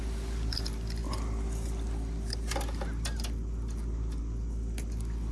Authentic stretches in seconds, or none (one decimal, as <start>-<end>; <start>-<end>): 0.0-5.3